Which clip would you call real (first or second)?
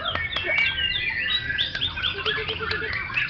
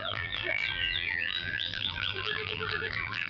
first